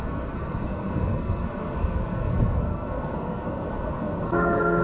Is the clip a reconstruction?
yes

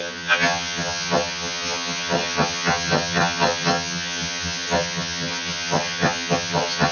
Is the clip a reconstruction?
yes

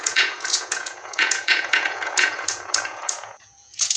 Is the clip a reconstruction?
yes